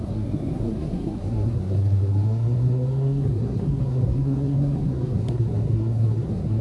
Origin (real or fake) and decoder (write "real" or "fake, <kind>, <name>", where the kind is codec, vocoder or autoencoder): fake, codec, SNAC